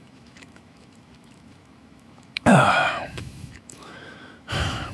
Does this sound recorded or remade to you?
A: remade